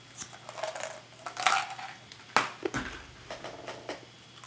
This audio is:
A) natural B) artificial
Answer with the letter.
A